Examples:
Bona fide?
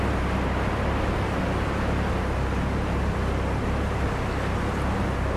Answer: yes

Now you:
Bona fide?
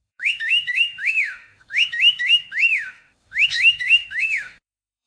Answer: no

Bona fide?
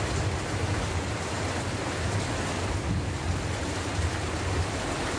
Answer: yes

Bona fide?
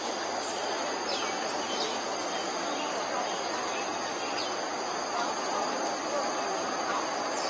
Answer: yes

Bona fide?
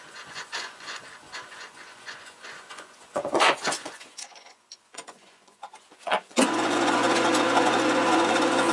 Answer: no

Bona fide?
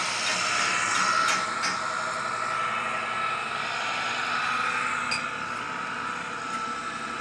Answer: yes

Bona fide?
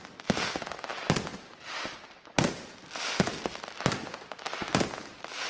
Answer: yes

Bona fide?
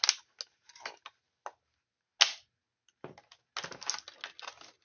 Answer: yes